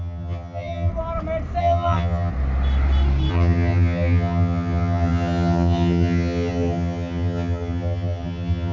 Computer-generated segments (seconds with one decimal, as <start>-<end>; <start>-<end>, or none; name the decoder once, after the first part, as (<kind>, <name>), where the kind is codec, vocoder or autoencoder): 0.0-0.9 (vocoder, HiFi-GAN); 1.6-2.3; 3.3-8.7